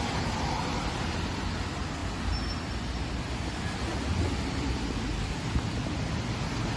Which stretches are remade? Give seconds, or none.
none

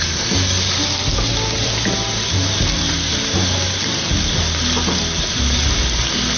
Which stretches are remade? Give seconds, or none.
1.3-4.3; 5.0-6.0